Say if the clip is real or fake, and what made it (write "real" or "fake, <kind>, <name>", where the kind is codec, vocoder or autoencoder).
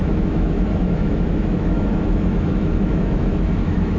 fake, autoencoder, DAC-VAE